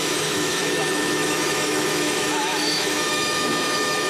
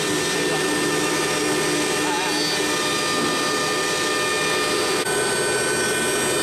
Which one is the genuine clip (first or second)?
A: second